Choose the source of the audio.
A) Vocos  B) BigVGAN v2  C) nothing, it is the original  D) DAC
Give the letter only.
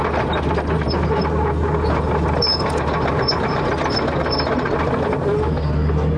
C